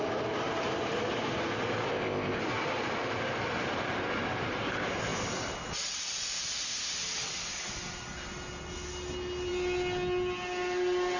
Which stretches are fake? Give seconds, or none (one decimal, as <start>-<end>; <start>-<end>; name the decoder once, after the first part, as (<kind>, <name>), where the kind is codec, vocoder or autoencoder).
1.9-2.4 (codec, ZipCodec)